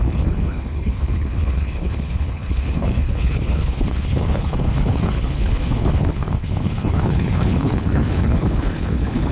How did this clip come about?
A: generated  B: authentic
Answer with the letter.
A